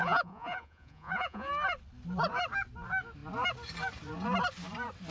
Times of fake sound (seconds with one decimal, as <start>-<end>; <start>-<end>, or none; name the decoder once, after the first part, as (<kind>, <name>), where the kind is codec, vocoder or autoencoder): 0.0-1.5 (vocoder, Vocos)